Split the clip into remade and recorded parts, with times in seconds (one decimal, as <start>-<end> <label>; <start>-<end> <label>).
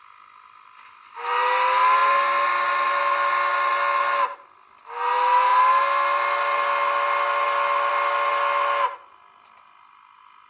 0.0-10.5 recorded